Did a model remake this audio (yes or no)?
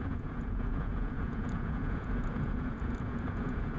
yes